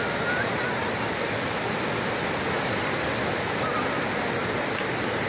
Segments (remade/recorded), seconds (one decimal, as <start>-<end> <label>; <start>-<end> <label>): 0.0-5.3 recorded